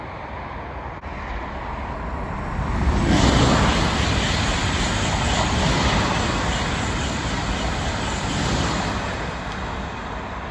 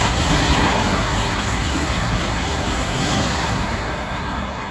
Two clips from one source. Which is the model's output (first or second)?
second